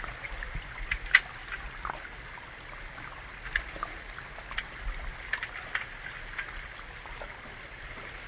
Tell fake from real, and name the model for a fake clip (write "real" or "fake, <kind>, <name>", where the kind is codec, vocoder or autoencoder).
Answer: real